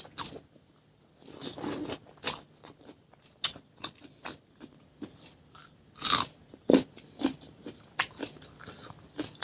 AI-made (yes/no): no